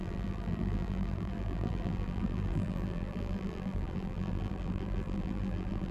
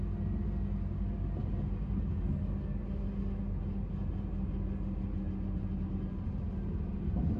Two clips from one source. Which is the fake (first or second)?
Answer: first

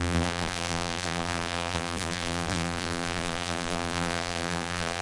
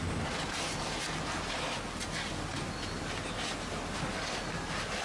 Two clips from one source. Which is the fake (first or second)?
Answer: first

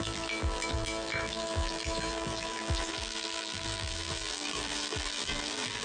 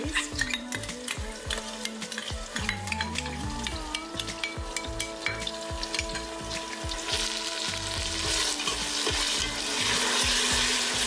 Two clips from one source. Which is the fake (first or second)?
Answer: first